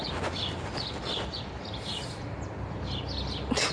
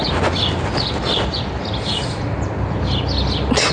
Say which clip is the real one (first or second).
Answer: second